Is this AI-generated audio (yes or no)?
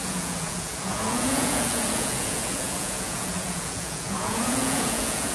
yes